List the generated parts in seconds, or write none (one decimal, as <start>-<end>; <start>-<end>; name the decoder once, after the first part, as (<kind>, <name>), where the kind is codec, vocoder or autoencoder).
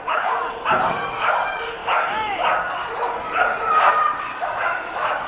0.0-5.3 (codec, DAC)